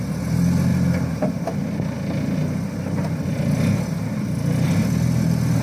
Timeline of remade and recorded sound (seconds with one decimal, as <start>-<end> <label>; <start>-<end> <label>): 0.0-0.7 remade; 0.7-4.1 recorded; 4.1-5.6 remade